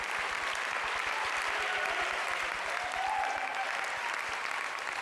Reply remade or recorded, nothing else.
recorded